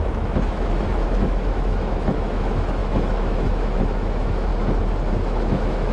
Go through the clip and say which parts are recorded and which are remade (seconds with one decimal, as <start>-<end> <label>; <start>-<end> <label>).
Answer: 0.0-4.5 remade; 4.5-5.1 recorded; 5.1-5.9 remade